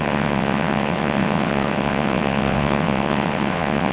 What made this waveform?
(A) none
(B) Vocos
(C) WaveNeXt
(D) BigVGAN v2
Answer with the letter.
C